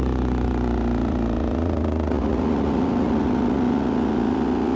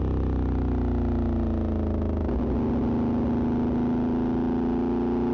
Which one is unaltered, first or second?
second